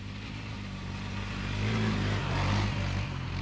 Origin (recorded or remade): recorded